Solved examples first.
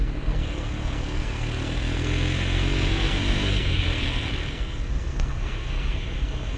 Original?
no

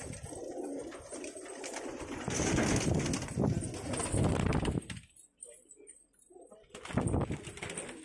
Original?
yes